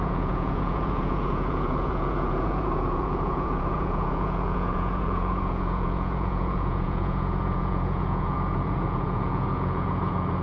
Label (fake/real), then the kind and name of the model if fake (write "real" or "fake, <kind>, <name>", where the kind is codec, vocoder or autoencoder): fake, vocoder, Vocos